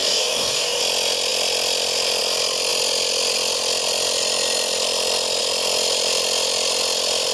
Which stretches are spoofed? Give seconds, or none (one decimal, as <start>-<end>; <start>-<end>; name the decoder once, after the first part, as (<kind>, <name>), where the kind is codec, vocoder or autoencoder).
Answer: 0.0-0.8 (codec, DAC)